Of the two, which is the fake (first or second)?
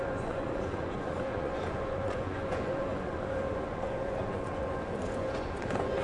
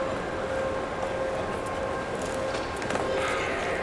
first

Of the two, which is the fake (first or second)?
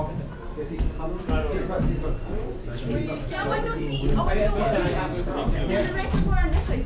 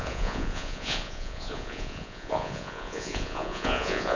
second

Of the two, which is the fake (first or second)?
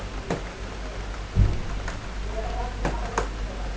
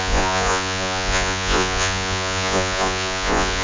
second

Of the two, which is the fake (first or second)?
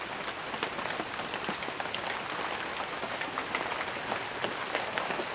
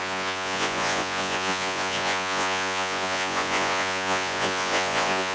second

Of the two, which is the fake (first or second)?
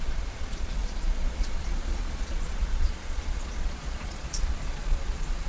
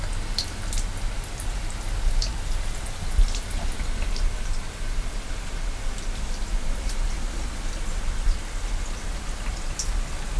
first